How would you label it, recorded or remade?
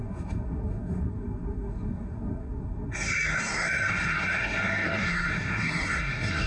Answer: remade